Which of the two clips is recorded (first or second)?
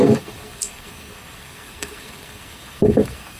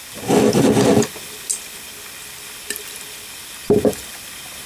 second